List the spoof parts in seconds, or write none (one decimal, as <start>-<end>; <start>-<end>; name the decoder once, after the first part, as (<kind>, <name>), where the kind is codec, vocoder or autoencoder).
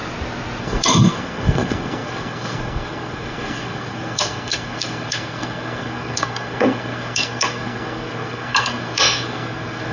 0.6-9.9 (codec, SNAC)